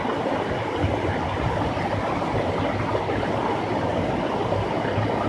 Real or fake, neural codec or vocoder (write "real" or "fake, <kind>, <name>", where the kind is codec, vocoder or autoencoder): real